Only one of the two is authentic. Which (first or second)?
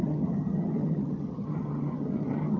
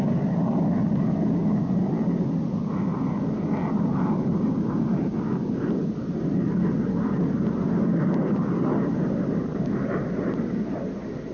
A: second